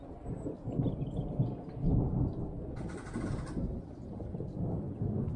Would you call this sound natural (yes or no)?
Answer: yes